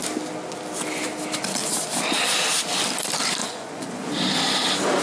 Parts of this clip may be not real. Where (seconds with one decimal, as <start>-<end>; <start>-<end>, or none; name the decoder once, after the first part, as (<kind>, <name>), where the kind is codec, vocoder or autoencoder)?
3.4-4.1 (vocoder, Vocos)